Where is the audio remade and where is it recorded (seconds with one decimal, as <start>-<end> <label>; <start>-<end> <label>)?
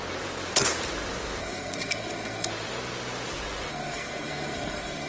0.0-1.4 recorded; 1.4-2.5 remade; 2.5-3.7 recorded; 3.7-5.1 remade